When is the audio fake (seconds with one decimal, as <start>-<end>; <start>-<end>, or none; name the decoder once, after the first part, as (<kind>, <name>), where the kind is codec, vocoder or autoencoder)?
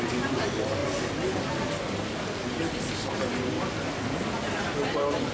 none